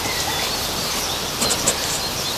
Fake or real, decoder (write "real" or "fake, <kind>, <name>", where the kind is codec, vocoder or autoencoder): fake, vocoder, BigVGAN v2